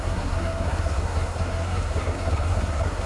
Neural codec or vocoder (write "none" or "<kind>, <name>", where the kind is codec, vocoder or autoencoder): codec, SNAC